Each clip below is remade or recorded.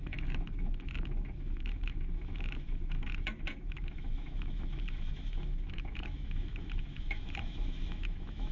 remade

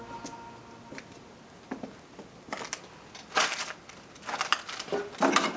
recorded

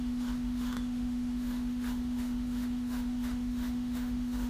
remade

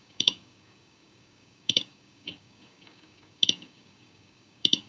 remade